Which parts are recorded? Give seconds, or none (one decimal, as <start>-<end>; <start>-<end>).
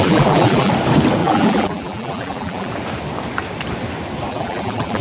0.7-1.2; 2.7-4.3